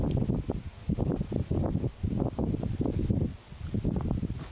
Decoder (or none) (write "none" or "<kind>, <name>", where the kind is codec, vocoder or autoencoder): none